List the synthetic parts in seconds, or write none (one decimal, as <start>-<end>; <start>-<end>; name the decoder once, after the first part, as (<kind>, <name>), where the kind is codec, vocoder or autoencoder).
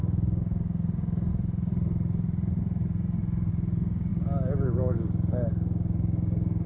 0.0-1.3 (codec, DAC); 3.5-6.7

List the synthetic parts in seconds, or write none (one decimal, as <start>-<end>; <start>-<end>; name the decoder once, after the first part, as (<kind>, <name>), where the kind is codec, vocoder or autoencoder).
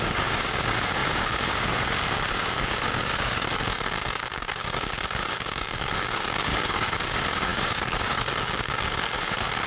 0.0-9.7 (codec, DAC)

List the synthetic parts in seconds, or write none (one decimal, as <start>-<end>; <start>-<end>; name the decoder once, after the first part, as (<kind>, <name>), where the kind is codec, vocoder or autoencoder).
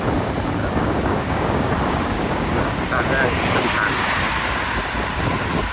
0.6-2.6 (codec, DAC)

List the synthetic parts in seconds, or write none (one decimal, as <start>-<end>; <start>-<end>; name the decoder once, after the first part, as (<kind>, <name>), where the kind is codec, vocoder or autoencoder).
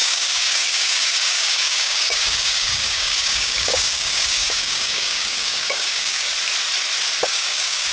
0.0-6.3 (codec, DAC); 7.2-7.9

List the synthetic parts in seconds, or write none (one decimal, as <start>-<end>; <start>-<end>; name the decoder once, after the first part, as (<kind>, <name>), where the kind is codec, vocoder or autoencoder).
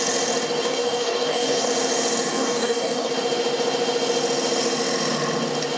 0.6-1.7 (codec, DAC); 2.3-3.1